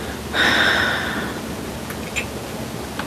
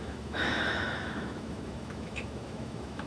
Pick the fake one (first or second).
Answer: second